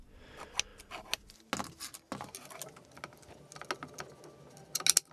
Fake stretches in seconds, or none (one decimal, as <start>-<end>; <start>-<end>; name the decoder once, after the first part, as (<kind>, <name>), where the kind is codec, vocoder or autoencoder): none